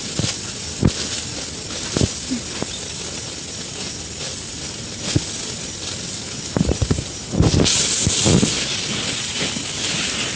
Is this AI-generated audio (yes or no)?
no